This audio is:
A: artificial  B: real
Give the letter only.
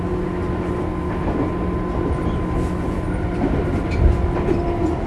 B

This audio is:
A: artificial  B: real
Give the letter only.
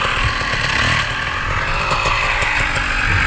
A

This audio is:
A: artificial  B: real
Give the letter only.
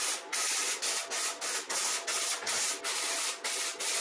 B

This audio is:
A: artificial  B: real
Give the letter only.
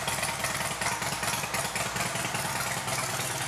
B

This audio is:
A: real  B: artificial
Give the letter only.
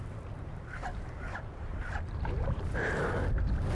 B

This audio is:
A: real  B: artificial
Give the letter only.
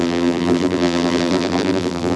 B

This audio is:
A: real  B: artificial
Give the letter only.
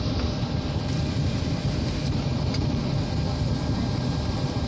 B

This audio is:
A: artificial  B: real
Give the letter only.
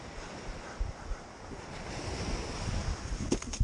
B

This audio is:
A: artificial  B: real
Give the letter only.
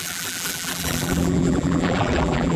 A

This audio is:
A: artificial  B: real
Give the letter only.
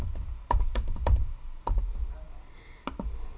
B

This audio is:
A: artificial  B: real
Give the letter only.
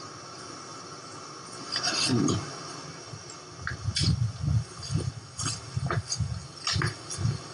B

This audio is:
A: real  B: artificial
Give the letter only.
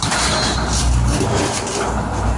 A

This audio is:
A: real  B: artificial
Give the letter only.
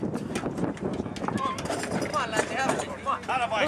A